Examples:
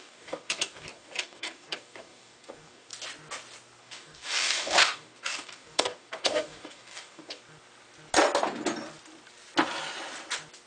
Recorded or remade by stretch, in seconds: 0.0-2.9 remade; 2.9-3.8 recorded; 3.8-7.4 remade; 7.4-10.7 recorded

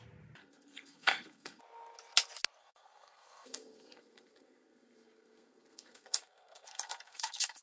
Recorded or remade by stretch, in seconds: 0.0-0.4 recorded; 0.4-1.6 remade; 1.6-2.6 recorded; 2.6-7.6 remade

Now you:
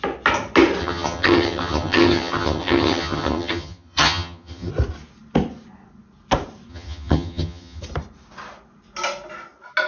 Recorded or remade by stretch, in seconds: 0.0-0.8 recorded; 0.8-4.7 remade; 4.7-6.7 recorded; 6.7-7.8 remade; 7.8-9.9 recorded